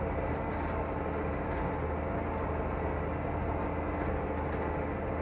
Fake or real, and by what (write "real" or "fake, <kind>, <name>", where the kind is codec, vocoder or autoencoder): real